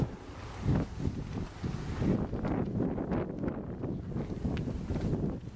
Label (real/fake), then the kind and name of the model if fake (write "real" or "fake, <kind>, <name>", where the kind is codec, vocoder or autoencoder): real